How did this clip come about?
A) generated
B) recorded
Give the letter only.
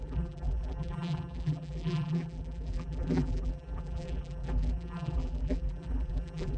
A